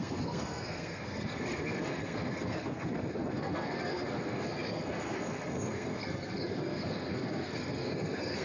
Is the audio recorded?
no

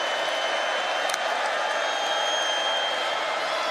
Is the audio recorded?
yes